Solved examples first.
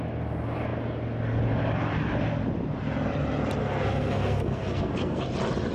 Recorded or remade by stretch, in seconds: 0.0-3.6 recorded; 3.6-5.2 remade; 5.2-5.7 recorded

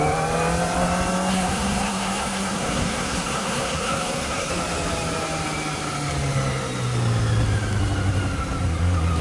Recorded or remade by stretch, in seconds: 0.0-1.3 recorded; 1.3-4.5 remade; 4.5-9.2 recorded

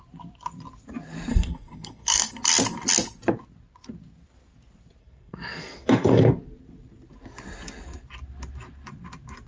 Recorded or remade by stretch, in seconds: 0.0-1.3 recorded; 1.3-2.3 remade; 2.3-5.0 recorded; 5.0-6.3 remade; 6.3-9.5 recorded

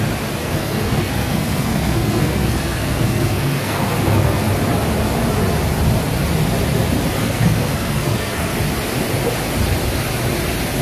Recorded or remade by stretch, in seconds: 0.0-0.4 recorded; 0.4-4.5 remade; 4.5-7.2 recorded; 7.2-8.5 remade; 8.5-10.8 recorded

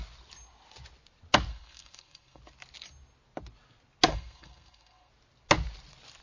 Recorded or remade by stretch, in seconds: 0.0-1.5 recorded; 1.5-2.4 remade; 2.4-4.1 recorded; 4.1-5.1 remade; 5.1-6.2 recorded

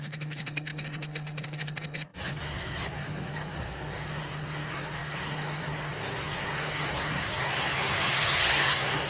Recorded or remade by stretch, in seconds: 0.0-9.1 remade

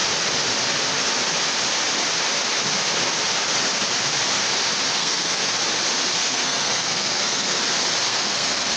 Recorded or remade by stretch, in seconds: 0.0-5.0 recorded; 5.0-5.5 remade; 5.5-6.2 recorded; 6.2-7.6 remade; 7.6-8.1 recorded; 8.1-8.8 remade

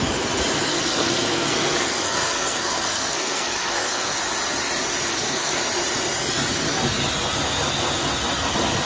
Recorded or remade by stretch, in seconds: 0.0-0.7 recorded; 0.7-4.2 remade; 4.2-5.1 recorded; 5.1-5.6 remade; 5.6-8.9 recorded